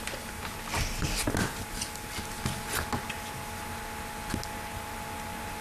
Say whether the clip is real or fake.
real